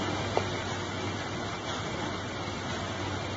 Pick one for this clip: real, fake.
real